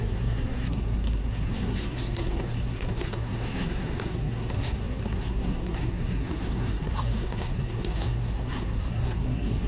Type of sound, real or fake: fake